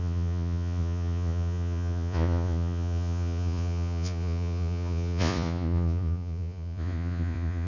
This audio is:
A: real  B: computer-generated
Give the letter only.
B